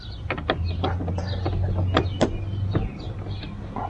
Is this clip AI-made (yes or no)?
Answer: no